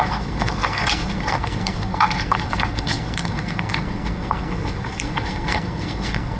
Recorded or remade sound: remade